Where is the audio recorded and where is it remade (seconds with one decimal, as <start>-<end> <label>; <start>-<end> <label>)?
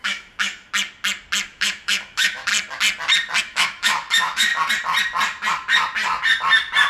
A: 0.0-0.7 remade; 0.7-1.5 recorded; 1.5-2.5 remade; 2.5-3.4 recorded; 3.4-4.5 remade; 4.5-6.9 recorded